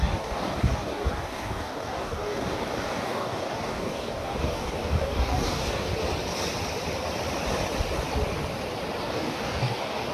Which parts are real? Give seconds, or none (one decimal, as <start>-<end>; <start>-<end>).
5.9-9.0